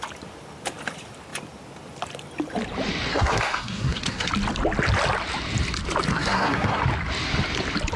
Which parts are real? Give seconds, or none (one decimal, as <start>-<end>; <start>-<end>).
0.0-3.1; 4.3-6.1; 6.8-8.0